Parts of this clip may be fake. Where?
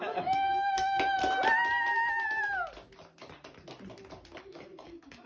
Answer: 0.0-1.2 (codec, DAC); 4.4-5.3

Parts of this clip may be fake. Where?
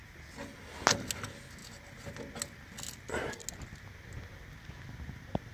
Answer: none